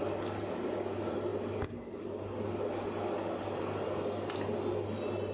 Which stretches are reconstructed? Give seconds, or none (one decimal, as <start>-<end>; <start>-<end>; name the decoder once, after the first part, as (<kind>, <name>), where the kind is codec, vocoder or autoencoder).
none